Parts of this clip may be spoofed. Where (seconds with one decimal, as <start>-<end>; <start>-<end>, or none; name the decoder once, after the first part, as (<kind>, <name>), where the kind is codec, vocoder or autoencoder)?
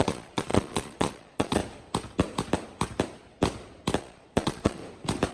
0.0-1.6 (vocoder, Vocos); 4.0-4.8